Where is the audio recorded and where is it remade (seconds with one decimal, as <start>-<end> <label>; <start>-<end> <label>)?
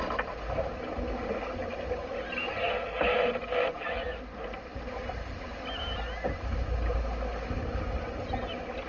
0.0-8.9 recorded